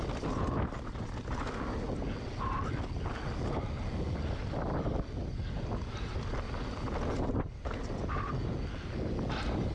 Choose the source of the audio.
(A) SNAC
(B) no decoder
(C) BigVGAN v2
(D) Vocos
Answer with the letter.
B